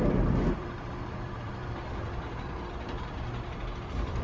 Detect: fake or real fake